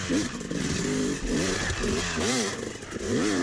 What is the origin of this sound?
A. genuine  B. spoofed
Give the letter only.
A